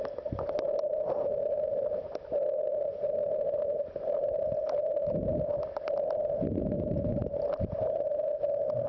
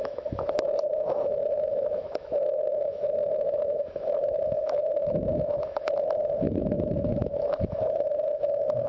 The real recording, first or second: first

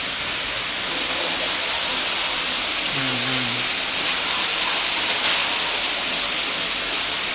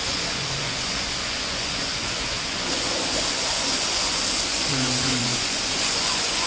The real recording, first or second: first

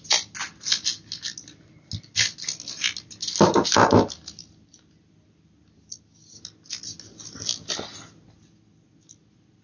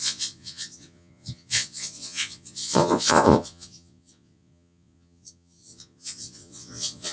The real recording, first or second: first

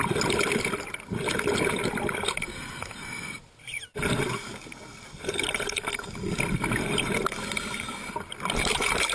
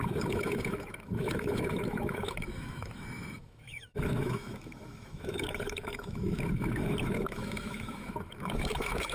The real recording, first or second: first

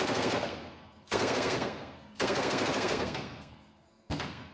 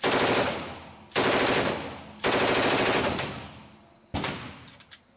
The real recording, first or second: second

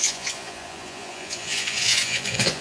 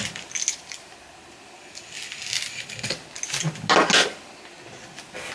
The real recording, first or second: second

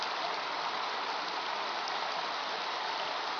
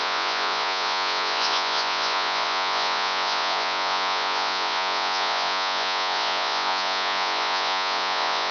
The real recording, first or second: first